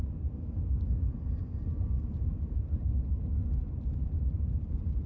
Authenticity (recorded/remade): recorded